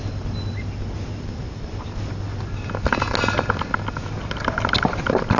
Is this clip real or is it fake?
real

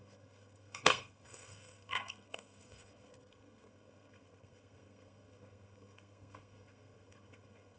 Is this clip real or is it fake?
fake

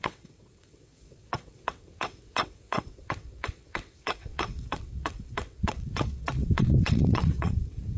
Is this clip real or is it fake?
fake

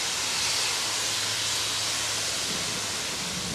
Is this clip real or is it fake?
real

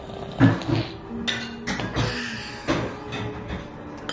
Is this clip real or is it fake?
real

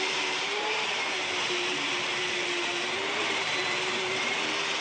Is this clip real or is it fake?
fake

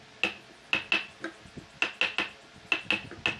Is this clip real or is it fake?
real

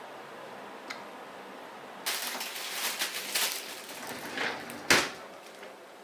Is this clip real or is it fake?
real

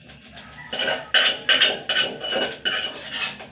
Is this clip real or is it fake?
real